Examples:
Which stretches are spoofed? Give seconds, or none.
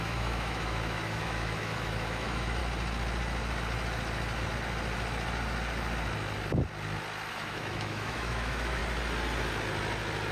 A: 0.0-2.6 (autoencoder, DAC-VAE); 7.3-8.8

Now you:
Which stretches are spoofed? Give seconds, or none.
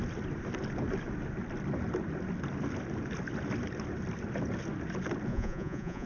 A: 5.3-6.1 (vocoder, Vocos)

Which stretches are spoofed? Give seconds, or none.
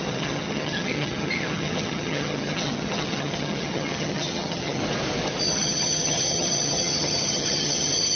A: 0.0-4.8 (vocoder, HiFi-GAN); 5.4-8.2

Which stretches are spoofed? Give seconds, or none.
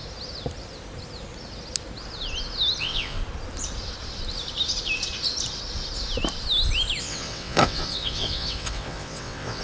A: 2.8-3.2 (vocoder, WaveNeXt); 7.0-9.6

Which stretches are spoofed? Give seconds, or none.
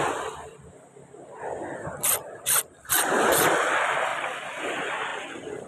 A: none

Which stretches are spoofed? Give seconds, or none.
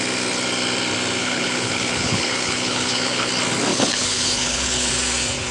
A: 1.2-3.3 (codec, HILCodec); 3.7-4.9